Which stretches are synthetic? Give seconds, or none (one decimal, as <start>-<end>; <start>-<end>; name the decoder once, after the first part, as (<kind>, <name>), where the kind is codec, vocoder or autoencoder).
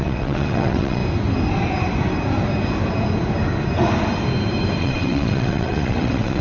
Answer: 0.0-1.0 (vocoder, WaveNeXt); 4.8-6.4